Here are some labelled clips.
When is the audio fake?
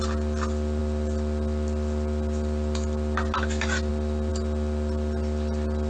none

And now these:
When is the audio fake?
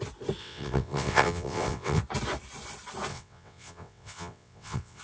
0.4-2.0 (vocoder, WaveNeXt); 3.1-5.0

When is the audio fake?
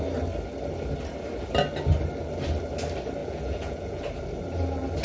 3.2-4.0 (vocoder, Vocos)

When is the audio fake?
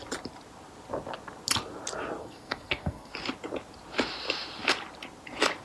2.2-3.1 (codec, SNAC)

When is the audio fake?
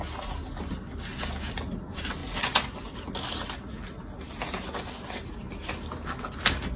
none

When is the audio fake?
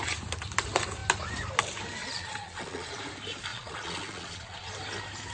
2.0-3.0 (vocoder, Vocos); 3.5-4.7